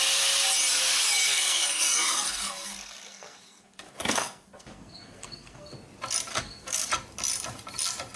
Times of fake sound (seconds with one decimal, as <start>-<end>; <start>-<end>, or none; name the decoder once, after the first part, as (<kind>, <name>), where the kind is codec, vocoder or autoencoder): 1.2-5.7 (codec, SNAC); 6.3-6.9